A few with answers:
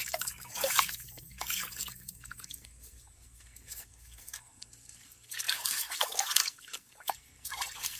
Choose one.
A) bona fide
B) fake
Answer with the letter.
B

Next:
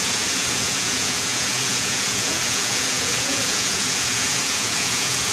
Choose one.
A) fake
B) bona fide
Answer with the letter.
A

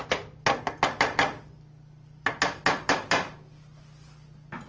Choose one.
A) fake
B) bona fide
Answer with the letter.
B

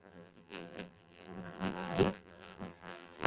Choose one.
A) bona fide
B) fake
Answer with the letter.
B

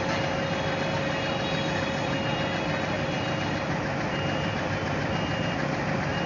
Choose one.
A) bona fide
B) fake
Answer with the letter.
A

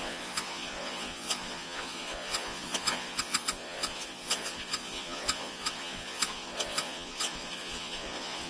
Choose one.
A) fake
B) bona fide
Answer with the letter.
A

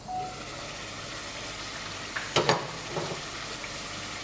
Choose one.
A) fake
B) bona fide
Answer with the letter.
B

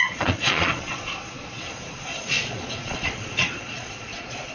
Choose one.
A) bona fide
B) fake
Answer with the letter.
B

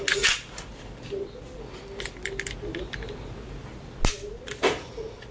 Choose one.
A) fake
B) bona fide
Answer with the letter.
B